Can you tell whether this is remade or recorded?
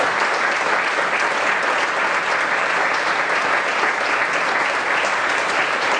recorded